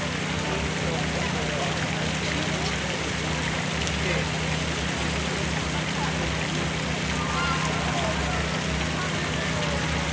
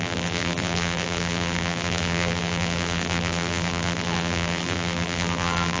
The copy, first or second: second